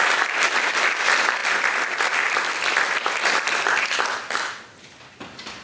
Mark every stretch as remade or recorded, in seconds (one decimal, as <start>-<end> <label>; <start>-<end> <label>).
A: 0.0-5.6 recorded